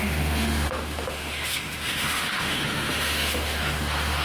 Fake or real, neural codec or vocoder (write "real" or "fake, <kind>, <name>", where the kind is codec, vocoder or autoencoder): fake, autoencoder, DAC-VAE